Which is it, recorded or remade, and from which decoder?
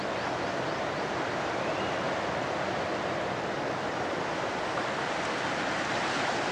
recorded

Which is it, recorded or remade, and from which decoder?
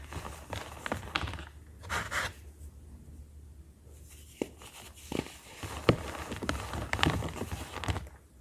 recorded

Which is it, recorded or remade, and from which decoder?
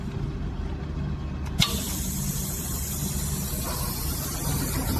recorded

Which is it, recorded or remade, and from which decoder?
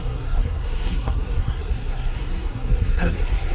remade, codec, SNAC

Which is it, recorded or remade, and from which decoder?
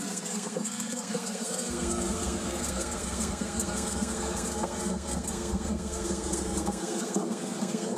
remade, codec, SNAC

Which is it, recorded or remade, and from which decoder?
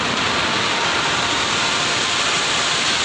recorded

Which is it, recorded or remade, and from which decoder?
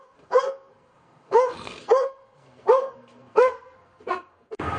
remade, codec, SNAC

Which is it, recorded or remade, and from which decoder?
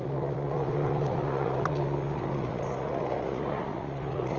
remade, vocoder, Vocos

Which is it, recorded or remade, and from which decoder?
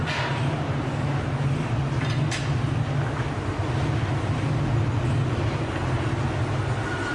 recorded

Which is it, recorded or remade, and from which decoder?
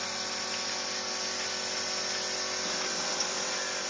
recorded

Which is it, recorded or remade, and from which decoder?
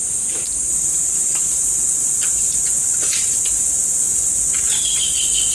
remade, vocoder, BigVGAN v2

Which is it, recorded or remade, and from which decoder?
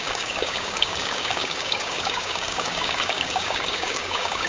remade, codec, DAC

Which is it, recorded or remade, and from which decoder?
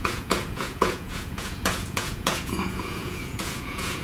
remade, vocoder, Vocos